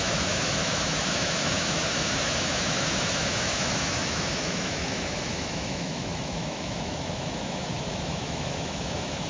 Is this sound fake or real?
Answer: fake